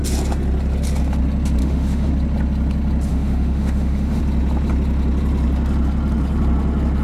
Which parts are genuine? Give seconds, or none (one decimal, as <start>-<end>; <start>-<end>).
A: 0.0-1.6; 2.1-3.1; 4.2-7.0